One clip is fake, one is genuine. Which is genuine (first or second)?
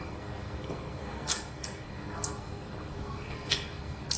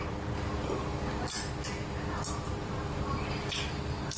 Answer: second